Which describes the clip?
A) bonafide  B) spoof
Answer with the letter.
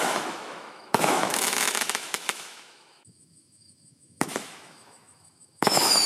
B